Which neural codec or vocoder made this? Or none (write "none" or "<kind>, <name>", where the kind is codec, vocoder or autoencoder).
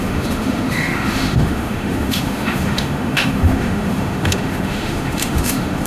autoencoder, DAC-VAE